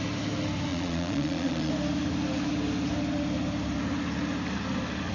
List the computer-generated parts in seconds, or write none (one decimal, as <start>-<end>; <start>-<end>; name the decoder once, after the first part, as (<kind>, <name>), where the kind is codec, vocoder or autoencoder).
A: 0.7-1.7 (vocoder, Vocos)